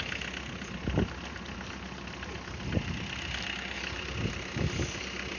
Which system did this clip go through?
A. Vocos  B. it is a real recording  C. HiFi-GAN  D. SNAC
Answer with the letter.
B